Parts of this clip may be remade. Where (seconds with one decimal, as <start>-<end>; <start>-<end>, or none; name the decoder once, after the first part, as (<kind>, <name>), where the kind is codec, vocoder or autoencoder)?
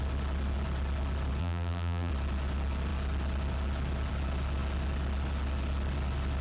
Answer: 1.4-2.1 (vocoder, BigVGAN v2)